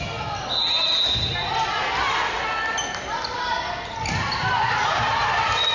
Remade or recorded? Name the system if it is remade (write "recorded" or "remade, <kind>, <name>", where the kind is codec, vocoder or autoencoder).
recorded